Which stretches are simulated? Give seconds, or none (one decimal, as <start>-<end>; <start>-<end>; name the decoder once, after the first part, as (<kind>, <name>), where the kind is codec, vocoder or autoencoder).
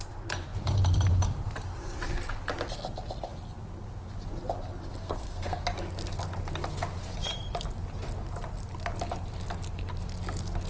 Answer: 5.0-5.6 (codec, SNAC)